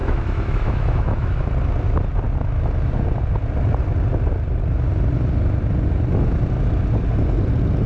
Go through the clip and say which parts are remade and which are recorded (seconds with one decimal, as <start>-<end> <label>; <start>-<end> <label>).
0.0-1.4 remade; 1.4-7.9 recorded